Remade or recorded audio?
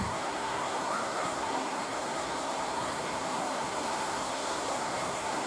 remade